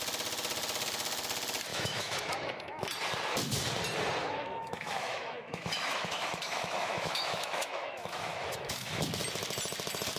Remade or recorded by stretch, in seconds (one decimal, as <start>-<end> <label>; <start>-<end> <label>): 0.0-1.7 recorded; 1.7-2.8 remade; 2.8-4.2 recorded; 4.2-8.9 remade; 8.9-10.2 recorded